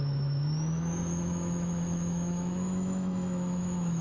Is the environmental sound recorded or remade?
remade